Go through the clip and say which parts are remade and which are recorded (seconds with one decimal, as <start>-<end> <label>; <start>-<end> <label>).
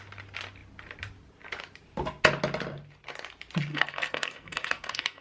0.0-3.7 recorded; 3.7-5.2 remade